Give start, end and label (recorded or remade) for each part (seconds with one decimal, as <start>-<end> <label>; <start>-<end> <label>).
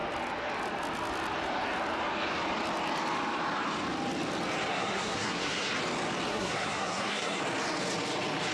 0.0-4.7 recorded; 4.7-5.7 remade; 5.7-6.3 recorded; 6.3-7.4 remade; 7.4-8.5 recorded